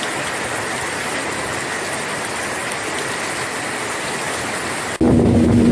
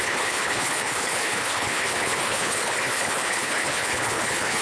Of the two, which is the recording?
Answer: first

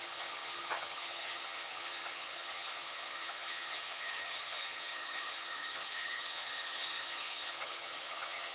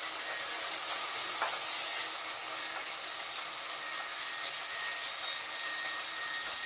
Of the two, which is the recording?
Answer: second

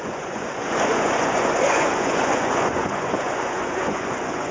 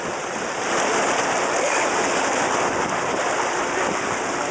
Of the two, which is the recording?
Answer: second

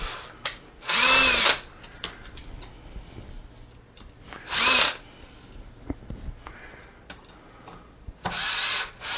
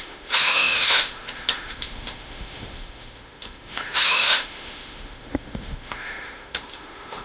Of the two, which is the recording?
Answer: first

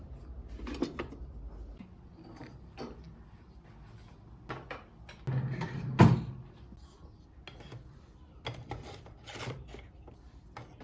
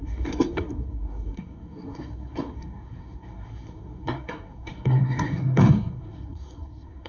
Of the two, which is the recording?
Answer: first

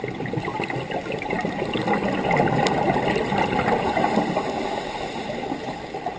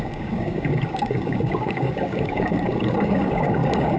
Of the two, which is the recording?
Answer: first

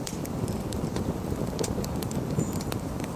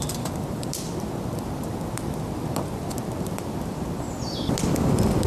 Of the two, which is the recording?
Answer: second